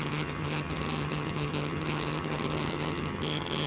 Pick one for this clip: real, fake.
fake